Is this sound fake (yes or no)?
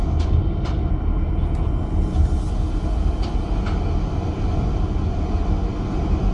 no